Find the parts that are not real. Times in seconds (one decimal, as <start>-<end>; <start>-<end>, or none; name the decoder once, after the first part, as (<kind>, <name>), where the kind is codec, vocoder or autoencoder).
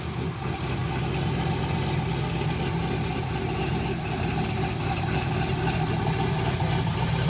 none